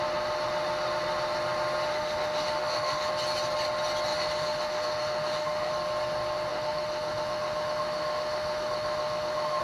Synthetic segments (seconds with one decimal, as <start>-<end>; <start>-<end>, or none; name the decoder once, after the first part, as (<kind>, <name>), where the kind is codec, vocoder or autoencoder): 1.9-3.1 (autoencoder, DAC-VAE); 4.1-5.7; 6.5-9.6